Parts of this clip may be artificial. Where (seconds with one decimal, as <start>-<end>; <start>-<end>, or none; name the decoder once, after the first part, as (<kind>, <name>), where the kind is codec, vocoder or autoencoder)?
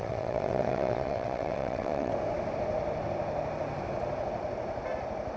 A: 0.0-2.1 (vocoder, WaveNeXt)